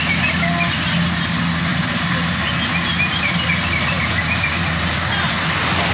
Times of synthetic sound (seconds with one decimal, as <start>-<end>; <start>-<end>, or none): 1.7-5.0